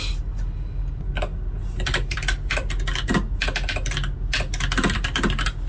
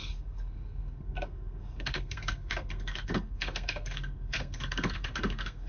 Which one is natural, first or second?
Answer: first